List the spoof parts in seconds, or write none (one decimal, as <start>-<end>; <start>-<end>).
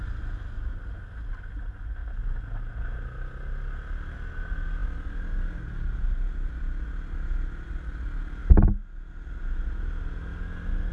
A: none